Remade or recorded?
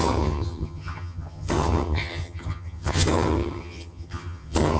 remade